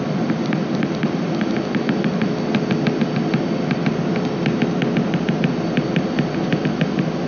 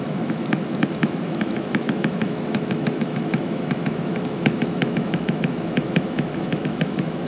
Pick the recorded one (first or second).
first